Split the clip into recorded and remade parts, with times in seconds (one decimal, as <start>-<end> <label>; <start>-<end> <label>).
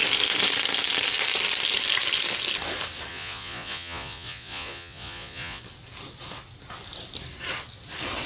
0.0-3.1 recorded; 3.1-5.6 remade; 5.6-8.3 recorded